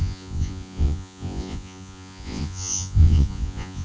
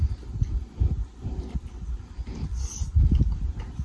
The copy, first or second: first